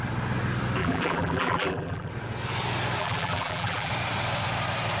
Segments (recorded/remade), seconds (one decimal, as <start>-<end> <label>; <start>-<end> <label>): 0.0-0.8 recorded; 0.8-2.1 remade; 2.1-3.0 recorded; 3.0-3.9 remade; 3.9-5.0 recorded